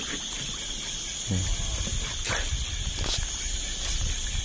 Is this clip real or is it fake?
real